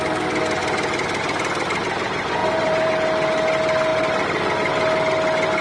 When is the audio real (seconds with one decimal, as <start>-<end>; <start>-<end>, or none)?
0.0-2.4; 2.9-5.6